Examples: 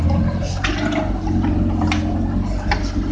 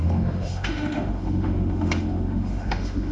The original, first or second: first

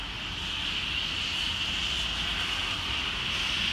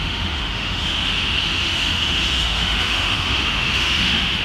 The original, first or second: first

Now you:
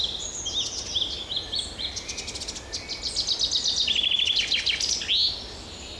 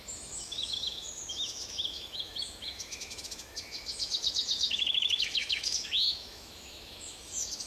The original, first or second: first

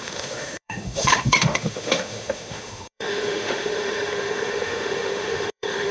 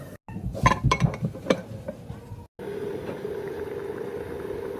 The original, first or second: second